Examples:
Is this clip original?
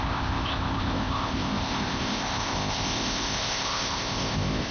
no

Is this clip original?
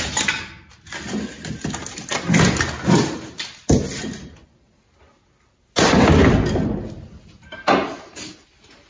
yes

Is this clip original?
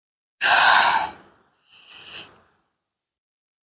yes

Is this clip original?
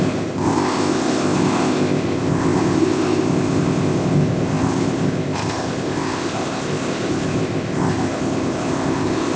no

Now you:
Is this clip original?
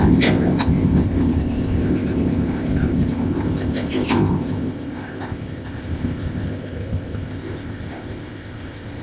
no